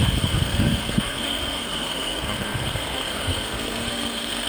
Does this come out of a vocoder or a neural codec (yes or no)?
yes